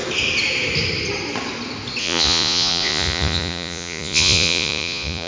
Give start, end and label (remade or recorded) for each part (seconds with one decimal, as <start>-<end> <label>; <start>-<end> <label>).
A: 0.0-2.0 recorded; 2.0-5.3 remade